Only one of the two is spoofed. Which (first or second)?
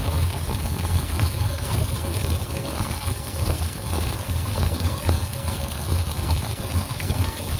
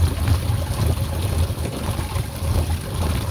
first